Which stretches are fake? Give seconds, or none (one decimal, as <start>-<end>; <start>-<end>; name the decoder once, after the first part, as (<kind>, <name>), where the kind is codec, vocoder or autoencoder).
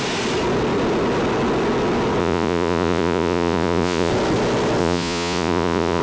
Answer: 2.2-4.1 (vocoder, Vocos); 4.8-6.0